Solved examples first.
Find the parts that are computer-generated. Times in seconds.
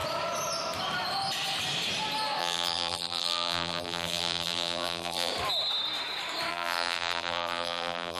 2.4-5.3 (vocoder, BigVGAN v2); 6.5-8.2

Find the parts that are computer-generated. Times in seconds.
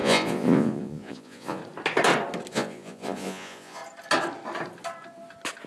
0.0-1.6 (vocoder, Vocos); 2.5-3.8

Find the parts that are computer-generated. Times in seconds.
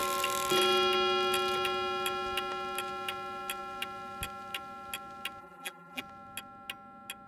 5.4-6.0 (vocoder, BigVGAN v2)